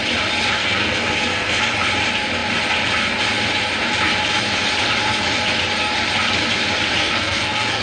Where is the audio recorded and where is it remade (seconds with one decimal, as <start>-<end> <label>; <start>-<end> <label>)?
0.0-0.6 recorded; 0.6-1.6 remade; 1.6-7.0 recorded; 7.0-7.8 remade

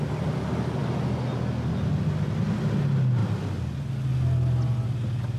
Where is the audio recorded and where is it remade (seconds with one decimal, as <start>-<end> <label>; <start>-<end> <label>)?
0.0-5.4 recorded

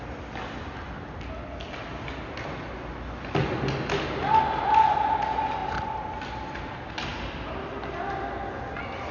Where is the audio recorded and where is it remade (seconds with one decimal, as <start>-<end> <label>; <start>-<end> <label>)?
0.0-9.1 recorded